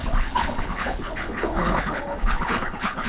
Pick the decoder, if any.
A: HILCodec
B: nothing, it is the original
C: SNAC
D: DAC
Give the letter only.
A